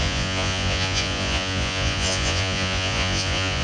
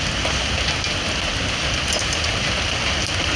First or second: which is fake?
first